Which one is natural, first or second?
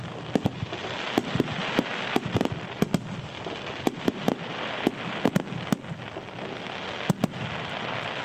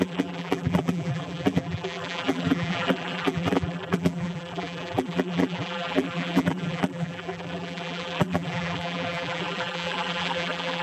first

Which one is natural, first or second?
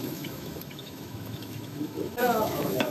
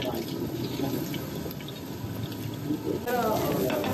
second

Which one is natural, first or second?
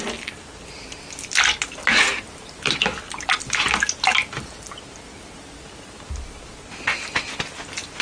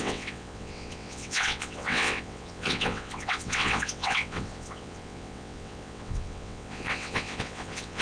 first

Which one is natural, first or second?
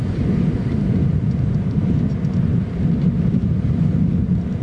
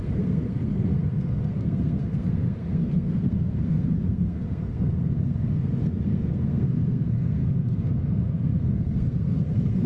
first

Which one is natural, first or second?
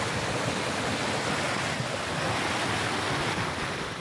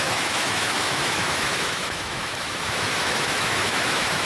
first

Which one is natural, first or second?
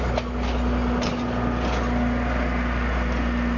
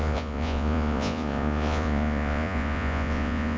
first